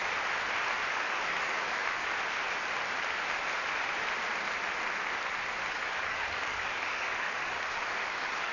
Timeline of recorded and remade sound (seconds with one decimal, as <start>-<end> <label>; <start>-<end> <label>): 0.0-0.9 recorded; 0.9-2.0 remade; 2.0-5.7 recorded; 5.7-8.5 remade